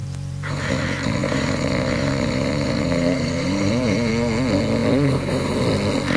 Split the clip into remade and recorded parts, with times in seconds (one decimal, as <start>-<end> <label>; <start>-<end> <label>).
0.0-0.7 remade; 0.7-1.2 recorded; 1.2-4.1 remade; 4.1-4.8 recorded; 4.8-5.5 remade; 5.5-6.2 recorded